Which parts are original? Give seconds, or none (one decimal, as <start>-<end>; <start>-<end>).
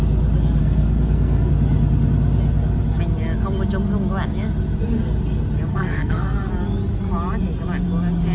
0.0-0.6; 1.5-5.7; 6.5-8.3